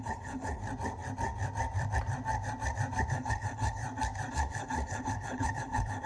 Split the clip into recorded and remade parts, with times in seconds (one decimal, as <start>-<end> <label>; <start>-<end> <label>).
0.0-0.6 remade; 0.6-3.1 recorded; 3.1-3.8 remade; 3.8-4.3 recorded; 4.3-6.1 remade